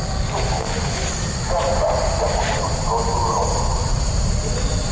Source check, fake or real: real